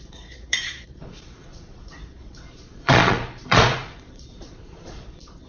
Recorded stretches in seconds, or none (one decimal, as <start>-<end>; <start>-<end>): none